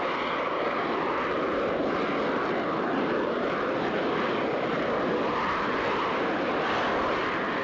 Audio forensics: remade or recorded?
recorded